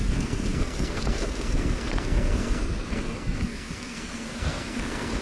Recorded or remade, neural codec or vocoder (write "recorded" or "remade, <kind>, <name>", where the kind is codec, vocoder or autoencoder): remade, codec, SNAC